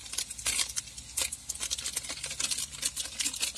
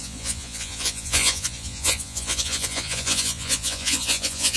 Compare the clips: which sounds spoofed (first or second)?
second